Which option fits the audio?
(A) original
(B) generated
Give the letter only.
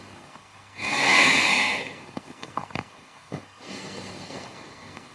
B